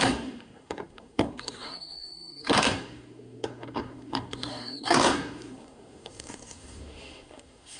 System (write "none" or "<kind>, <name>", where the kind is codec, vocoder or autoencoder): codec, SNAC